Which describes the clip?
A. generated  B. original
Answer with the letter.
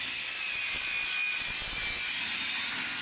B